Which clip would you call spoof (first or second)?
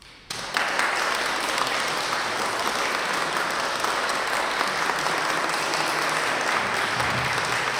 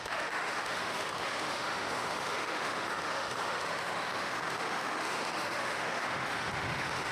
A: second